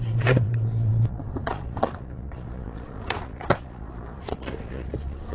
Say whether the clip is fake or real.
fake